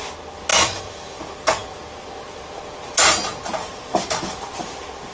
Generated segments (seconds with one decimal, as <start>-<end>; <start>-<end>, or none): 0.5-1.2